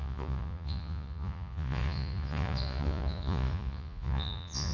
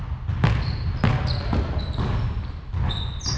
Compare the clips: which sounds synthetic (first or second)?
first